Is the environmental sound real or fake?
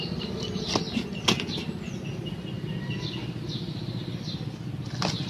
real